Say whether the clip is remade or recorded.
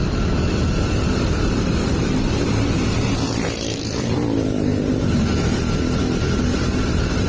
remade